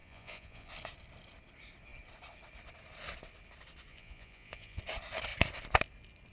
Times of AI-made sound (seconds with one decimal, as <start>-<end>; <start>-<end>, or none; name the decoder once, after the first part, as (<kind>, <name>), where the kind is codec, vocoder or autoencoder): 0.0-0.7 (vocoder, Vocos); 3.9-4.8